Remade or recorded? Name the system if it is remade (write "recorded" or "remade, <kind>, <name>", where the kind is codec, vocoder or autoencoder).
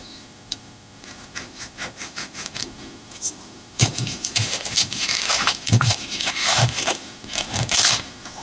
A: remade, autoencoder, DAC-VAE